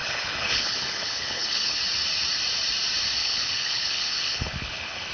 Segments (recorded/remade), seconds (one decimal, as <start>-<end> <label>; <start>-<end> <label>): 0.0-1.8 remade; 1.8-3.2 recorded; 3.2-5.1 remade